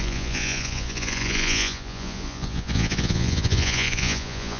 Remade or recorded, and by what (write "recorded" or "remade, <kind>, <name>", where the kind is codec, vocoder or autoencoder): remade, vocoder, Vocos